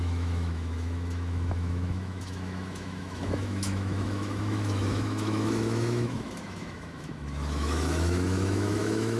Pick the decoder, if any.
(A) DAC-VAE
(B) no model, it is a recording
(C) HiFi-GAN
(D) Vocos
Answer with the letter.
A